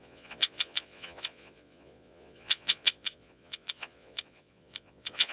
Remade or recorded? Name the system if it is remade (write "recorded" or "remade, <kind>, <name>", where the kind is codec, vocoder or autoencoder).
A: remade, vocoder, Vocos